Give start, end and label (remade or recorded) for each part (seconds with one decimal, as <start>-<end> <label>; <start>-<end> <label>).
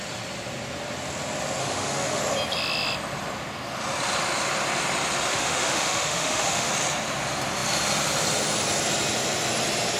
0.0-1.6 recorded; 1.6-2.2 remade; 2.2-5.3 recorded; 5.3-6.7 remade; 6.7-10.0 recorded